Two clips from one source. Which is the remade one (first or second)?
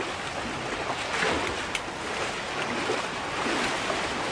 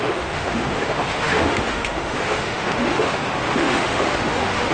second